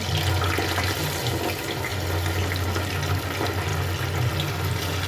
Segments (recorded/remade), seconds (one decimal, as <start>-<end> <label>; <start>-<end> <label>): 0.0-5.1 recorded